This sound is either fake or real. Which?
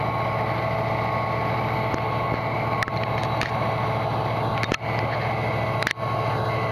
real